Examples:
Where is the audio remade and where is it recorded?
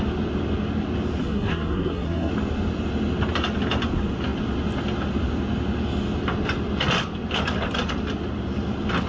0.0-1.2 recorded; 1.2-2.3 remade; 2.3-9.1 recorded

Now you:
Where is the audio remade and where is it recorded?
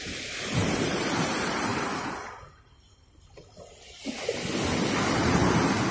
0.0-1.7 remade; 1.7-5.2 recorded; 5.2-5.9 remade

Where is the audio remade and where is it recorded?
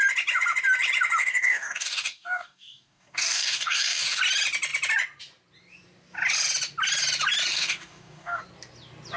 0.0-1.2 recorded; 1.2-4.2 remade; 4.2-7.5 recorded; 7.5-8.4 remade; 8.4-9.2 recorded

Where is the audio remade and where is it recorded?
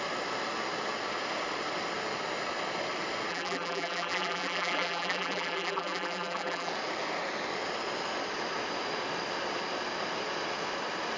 0.0-3.3 recorded; 3.3-6.7 remade; 6.7-11.2 recorded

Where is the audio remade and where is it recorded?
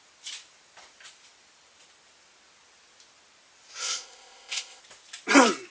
0.0-3.8 recorded; 3.8-4.8 remade; 4.8-5.7 recorded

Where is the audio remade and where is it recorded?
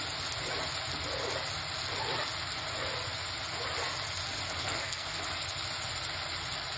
0.0-4.6 recorded; 4.6-5.2 remade; 5.2-6.8 recorded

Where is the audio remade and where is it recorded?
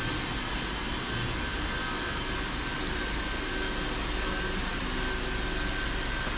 0.0-6.4 recorded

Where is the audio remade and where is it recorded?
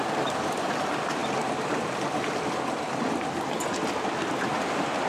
0.0-5.1 recorded